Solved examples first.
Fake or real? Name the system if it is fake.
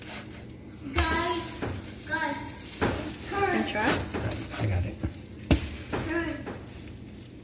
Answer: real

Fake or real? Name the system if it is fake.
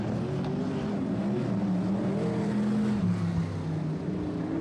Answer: real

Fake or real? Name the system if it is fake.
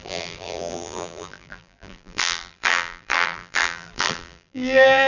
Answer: fake, vocoder, BigVGAN v2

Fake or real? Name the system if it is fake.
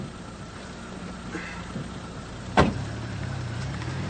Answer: fake, vocoder, BigVGAN v2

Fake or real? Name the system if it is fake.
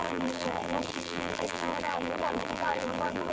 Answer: fake, vocoder, BigVGAN v2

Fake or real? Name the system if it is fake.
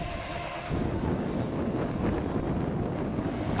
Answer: real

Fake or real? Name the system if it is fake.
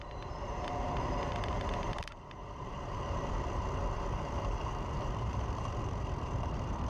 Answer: fake, vocoder, BigVGAN v2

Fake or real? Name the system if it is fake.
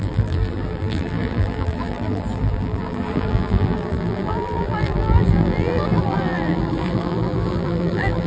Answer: fake, vocoder, BigVGAN v2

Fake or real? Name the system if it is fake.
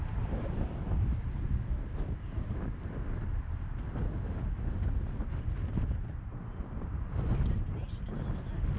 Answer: real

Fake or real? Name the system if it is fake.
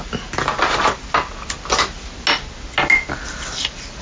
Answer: real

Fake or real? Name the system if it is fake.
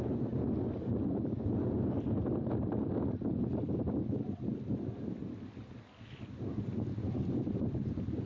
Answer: fake, vocoder, BigVGAN v2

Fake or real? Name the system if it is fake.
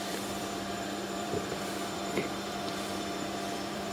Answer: fake, vocoder, BigVGAN v2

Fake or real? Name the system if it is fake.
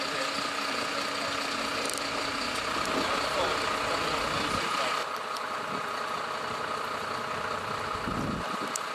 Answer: real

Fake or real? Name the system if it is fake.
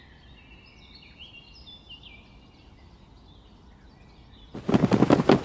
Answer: real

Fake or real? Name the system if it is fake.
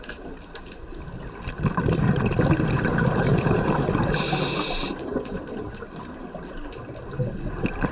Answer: real